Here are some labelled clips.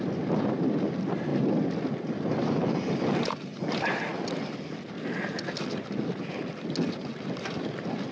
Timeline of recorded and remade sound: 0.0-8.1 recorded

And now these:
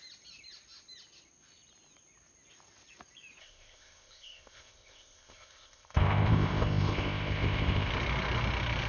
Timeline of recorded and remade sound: 0.0-3.4 recorded; 3.4-7.9 remade; 7.9-8.9 recorded

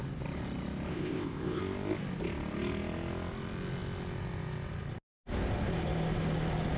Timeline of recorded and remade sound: 0.0-0.9 recorded; 0.9-1.6 remade; 1.6-6.8 recorded